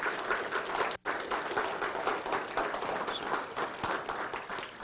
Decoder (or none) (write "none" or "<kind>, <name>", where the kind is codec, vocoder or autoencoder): none